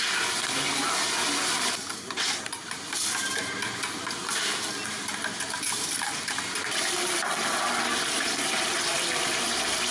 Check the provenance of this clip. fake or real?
real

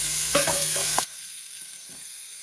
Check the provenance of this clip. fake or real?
fake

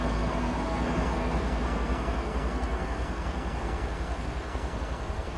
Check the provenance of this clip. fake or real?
fake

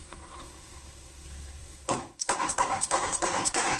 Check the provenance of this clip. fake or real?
fake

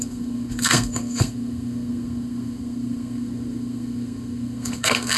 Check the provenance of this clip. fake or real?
fake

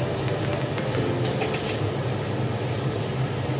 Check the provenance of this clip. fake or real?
real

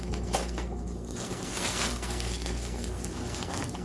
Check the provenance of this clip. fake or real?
fake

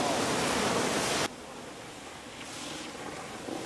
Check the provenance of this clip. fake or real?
real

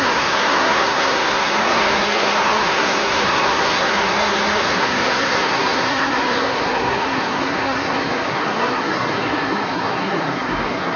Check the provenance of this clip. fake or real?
fake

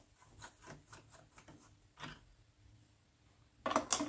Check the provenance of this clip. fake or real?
real